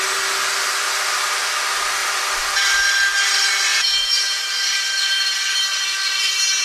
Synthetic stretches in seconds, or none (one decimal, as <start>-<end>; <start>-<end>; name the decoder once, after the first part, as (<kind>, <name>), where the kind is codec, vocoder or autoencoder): 3.7-4.4 (vocoder, Vocos)